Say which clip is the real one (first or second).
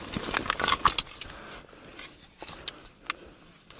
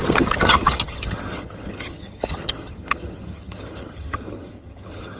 first